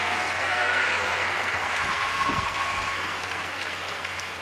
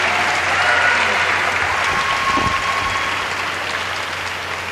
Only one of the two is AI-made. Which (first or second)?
first